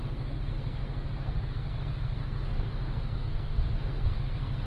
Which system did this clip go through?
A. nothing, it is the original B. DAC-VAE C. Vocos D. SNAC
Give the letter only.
D